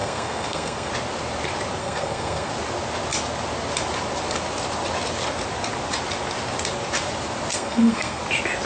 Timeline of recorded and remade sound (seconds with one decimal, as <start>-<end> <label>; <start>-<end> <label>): 0.0-0.9 remade; 0.9-1.8 recorded; 1.8-2.5 remade; 2.5-7.5 recorded; 7.5-8.2 remade; 8.2-8.7 recorded